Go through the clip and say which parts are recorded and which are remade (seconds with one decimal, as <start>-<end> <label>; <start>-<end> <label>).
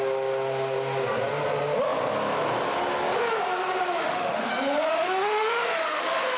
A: 0.0-4.0 recorded; 4.0-4.5 remade; 4.5-4.9 recorded; 4.9-6.4 remade